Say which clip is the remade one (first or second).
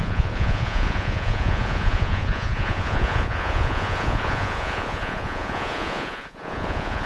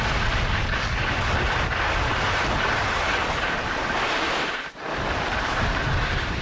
first